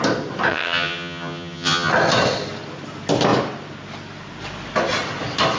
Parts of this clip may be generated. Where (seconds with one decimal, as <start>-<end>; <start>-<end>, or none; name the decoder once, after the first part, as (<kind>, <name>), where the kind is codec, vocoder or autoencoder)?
0.5-1.9 (vocoder, HiFi-GAN)

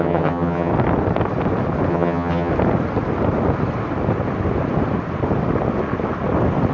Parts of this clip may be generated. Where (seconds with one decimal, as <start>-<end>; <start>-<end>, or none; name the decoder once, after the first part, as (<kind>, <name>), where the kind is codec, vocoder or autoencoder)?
0.0-0.7 (vocoder, HiFi-GAN); 1.9-2.5

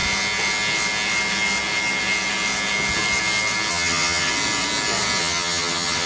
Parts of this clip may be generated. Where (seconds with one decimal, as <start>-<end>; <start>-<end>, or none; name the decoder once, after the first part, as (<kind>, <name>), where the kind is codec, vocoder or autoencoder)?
3.7-4.3 (vocoder, HiFi-GAN); 5.2-6.1

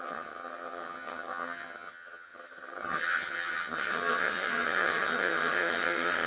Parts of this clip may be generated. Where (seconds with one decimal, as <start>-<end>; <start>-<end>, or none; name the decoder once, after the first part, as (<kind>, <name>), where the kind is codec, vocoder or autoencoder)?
0.0-6.3 (vocoder, HiFi-GAN)

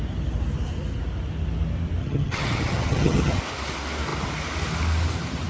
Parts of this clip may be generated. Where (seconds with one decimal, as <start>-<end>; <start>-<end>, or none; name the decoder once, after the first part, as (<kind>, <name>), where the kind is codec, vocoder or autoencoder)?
2.0-3.4 (vocoder, HiFi-GAN)

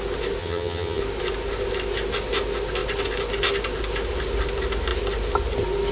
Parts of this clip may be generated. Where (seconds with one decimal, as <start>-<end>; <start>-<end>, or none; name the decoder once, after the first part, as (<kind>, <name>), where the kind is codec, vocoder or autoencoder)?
0.4-1.0 (vocoder, HiFi-GAN)